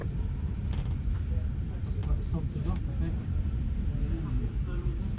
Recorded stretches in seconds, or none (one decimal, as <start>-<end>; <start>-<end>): none